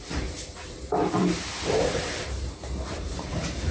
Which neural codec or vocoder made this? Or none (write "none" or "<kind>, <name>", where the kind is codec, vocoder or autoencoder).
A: vocoder, BigVGAN v2